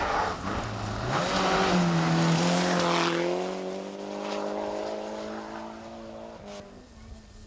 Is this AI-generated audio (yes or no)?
no